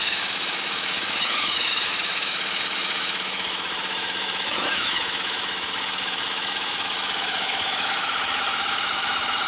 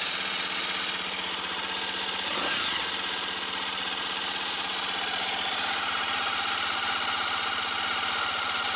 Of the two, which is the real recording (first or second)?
second